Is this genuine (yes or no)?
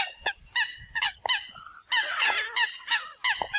yes